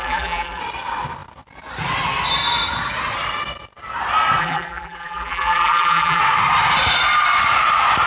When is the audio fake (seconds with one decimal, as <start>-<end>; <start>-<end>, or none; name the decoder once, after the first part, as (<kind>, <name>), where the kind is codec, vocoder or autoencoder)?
0.0-0.6 (vocoder, BigVGAN v2); 4.4-6.2